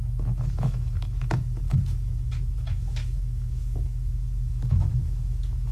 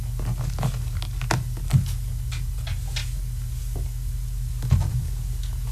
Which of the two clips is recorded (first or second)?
second